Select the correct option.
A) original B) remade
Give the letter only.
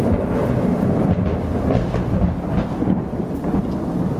A